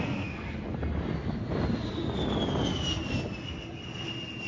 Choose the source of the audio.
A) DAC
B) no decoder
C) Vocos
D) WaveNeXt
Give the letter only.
B